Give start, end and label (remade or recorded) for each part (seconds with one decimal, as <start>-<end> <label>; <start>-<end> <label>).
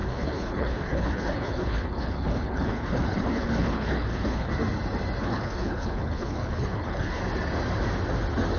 0.0-4.5 remade; 4.5-5.2 recorded; 5.2-7.2 remade; 7.2-8.6 recorded